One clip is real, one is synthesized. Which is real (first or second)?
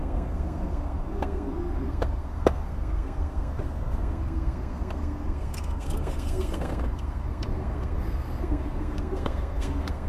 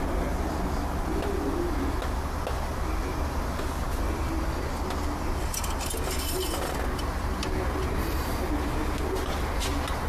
second